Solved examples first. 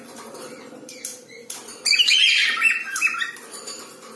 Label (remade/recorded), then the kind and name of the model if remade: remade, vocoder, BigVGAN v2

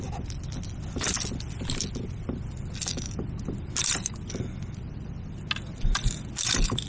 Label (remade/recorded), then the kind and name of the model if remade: recorded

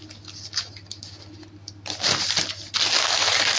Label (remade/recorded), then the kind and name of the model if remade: recorded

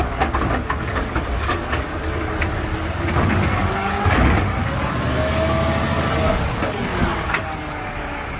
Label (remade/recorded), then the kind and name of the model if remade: remade, codec, DAC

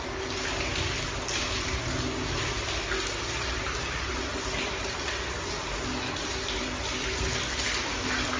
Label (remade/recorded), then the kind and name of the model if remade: recorded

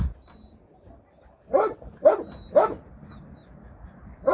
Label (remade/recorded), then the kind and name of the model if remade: recorded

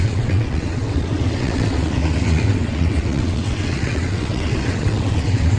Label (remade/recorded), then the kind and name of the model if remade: remade, vocoder, WaveNeXt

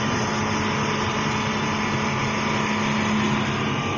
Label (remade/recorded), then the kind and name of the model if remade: recorded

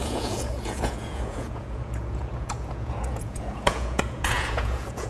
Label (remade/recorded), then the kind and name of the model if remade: remade, vocoder, Vocos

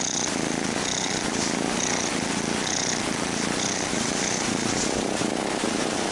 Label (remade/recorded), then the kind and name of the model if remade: recorded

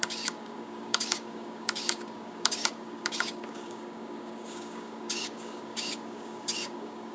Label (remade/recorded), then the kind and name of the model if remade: remade, codec, DAC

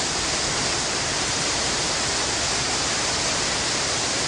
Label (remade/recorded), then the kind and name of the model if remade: remade, vocoder, BigVGAN v2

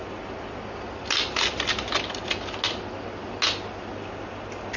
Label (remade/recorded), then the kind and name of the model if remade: recorded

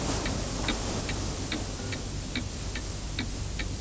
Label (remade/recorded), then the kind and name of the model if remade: recorded